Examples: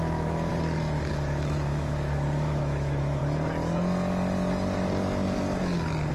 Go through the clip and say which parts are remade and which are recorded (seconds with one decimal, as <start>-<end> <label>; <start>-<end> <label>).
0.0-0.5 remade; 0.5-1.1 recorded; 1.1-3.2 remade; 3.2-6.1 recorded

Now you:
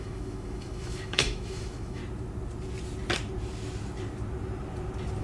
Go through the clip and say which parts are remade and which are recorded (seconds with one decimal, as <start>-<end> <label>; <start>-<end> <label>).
0.0-2.0 remade; 2.0-5.2 recorded

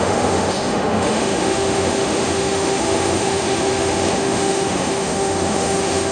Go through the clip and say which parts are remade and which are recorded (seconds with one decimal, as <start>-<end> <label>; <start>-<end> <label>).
0.0-6.1 remade